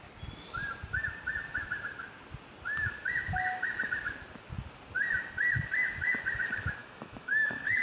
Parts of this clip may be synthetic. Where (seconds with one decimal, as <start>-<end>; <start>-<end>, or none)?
6.8-7.8